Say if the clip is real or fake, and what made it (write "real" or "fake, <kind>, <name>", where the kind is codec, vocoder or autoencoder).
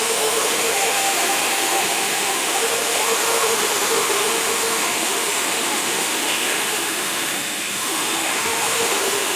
fake, autoencoder, DAC-VAE